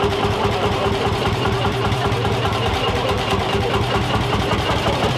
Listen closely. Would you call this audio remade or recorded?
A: remade